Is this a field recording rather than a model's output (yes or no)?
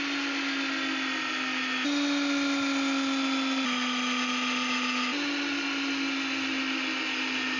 yes